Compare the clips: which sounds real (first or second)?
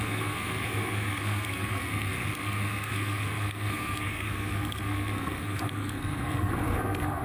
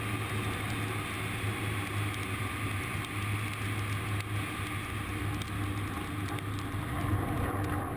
second